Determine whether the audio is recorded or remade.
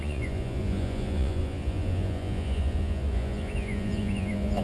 remade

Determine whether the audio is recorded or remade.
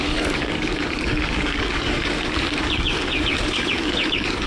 remade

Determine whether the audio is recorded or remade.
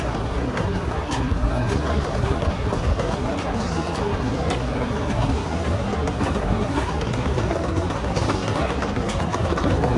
remade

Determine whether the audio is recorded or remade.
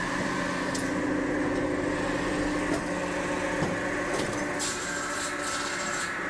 recorded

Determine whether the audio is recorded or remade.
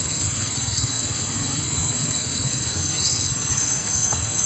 remade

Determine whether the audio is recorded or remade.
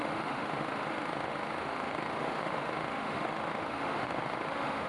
remade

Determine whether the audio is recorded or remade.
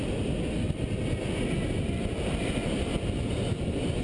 recorded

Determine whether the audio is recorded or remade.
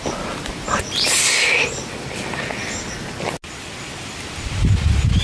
recorded